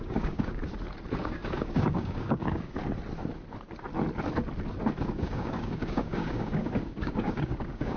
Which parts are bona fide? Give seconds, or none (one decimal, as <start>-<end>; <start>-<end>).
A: 0.6-1.2; 2.8-5.0